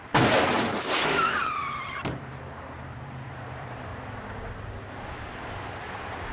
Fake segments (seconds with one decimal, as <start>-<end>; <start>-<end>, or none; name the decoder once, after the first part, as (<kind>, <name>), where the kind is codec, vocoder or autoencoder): 0.0-3.9 (vocoder, BigVGAN v2); 5.8-6.3